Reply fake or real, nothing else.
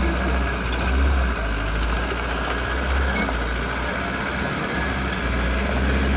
real